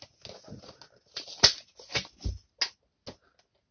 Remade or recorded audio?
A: recorded